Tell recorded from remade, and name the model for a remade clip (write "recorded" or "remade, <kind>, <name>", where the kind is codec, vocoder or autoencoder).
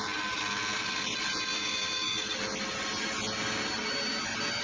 recorded